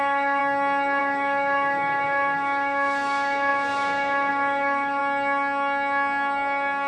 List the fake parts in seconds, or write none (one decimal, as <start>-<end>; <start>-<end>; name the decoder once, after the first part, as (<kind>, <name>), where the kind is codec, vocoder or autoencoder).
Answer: 0.0-0.4 (autoencoder, DAC-VAE); 1.0-5.0